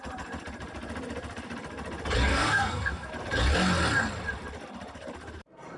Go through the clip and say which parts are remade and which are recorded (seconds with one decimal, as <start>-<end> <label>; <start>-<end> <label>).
0.0-2.3 recorded; 2.3-3.1 remade; 3.1-5.8 recorded